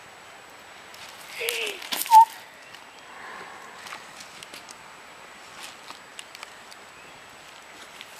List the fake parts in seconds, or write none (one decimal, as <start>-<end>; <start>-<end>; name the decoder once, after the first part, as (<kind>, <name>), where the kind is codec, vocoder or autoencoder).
none